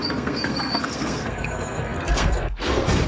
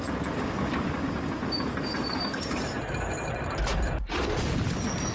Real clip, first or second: second